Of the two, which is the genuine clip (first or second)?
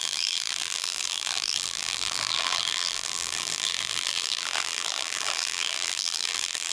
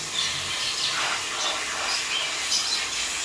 second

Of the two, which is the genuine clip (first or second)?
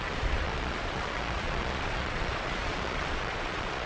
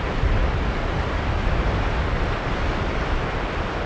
second